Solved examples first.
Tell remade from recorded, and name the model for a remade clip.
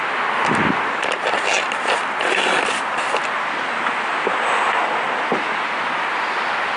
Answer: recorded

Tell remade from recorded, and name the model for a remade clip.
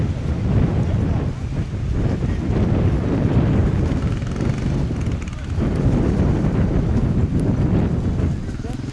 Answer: recorded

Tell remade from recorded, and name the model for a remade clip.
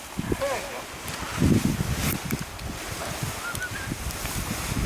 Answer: recorded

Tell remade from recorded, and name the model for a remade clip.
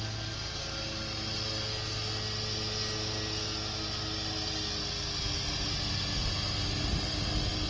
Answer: recorded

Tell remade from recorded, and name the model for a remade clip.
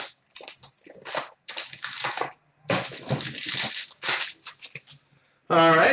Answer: recorded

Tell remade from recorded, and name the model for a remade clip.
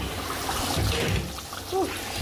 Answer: recorded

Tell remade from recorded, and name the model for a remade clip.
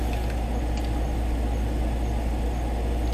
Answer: recorded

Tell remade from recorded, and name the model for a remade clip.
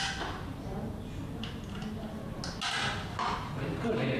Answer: recorded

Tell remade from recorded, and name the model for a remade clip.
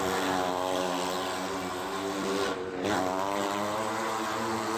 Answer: recorded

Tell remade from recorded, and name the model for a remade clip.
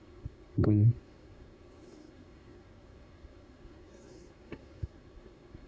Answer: remade, codec, SNAC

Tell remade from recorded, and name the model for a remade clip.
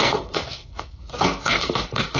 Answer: remade, codec, SNAC